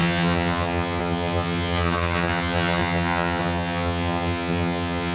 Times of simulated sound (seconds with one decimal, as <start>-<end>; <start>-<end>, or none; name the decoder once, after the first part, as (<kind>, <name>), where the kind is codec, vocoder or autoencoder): 0.0-5.1 (vocoder, HiFi-GAN)